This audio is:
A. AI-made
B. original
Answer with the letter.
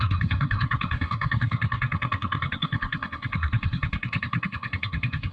A